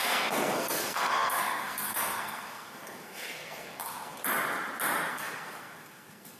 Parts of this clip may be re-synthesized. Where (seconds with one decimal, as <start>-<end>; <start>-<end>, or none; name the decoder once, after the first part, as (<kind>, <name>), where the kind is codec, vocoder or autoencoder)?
0.0-4.2 (codec, SNAC); 5.1-6.4